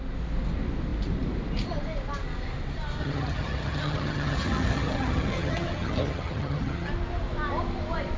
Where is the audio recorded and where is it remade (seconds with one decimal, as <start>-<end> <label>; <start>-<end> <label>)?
0.0-3.0 recorded; 3.0-6.9 remade; 6.9-8.2 recorded